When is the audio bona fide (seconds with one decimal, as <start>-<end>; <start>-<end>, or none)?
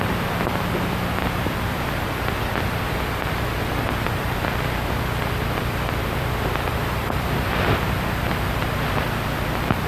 6.8-8.6